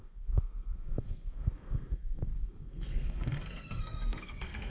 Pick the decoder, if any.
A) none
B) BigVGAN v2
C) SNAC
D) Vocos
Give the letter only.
C